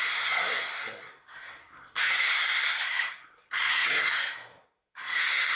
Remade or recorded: remade